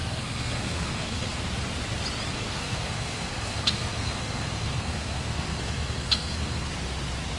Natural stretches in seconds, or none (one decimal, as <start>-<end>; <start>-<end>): 1.4-2.3; 6.7-7.4

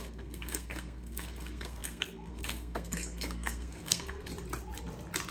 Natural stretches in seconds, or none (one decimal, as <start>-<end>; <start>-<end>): 4.3-5.3

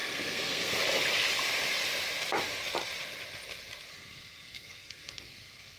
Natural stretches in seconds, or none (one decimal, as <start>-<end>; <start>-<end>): 0.8-3.9

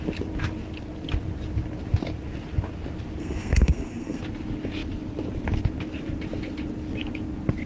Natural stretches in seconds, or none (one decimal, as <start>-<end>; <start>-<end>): 0.0-3.2; 4.2-7.7

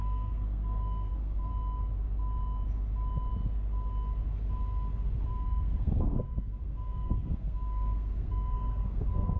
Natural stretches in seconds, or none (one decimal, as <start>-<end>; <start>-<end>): 1.5-5.3